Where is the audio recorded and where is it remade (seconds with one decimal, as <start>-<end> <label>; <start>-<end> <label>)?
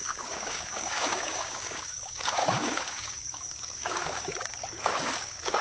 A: 0.0-5.6 remade